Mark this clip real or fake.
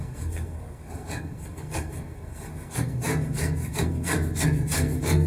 fake